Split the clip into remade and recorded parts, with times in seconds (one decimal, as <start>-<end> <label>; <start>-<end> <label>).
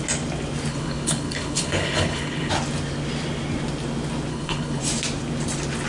0.0-0.7 recorded; 0.7-2.5 remade; 2.5-4.3 recorded; 4.3-4.8 remade; 4.8-5.9 recorded